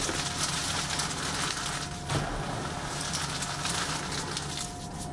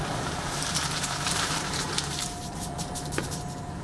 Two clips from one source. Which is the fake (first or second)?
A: second